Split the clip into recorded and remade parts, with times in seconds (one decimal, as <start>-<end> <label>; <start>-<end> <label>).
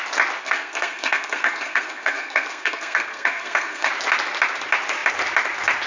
0.0-0.4 recorded; 0.4-3.9 remade; 3.9-5.9 recorded